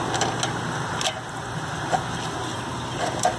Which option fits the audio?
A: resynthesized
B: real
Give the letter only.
B